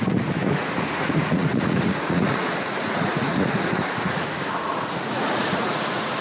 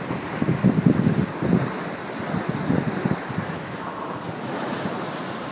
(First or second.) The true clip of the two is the second